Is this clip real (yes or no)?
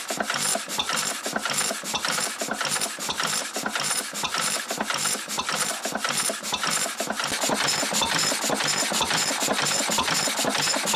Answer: yes